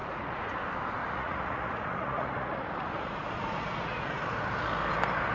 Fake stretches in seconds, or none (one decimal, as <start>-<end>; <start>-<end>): 0.0-0.6; 1.0-4.2